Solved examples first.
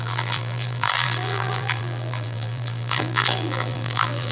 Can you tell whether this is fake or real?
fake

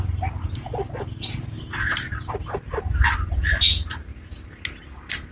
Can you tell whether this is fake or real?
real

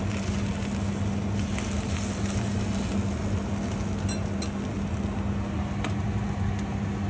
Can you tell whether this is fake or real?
real